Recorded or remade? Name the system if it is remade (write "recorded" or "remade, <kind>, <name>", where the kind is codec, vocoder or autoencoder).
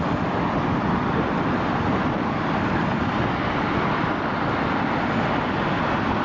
recorded